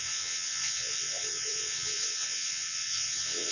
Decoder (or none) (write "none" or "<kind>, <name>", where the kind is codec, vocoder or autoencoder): vocoder, WaveNeXt